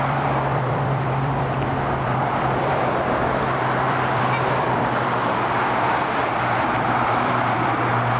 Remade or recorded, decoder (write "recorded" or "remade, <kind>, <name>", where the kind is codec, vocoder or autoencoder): remade, vocoder, BigVGAN v2